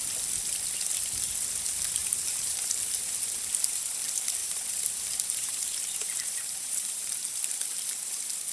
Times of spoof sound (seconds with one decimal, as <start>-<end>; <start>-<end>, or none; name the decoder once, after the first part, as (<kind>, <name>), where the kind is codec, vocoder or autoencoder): 2.0-2.7 (vocoder, BigVGAN v2); 4.4-7.3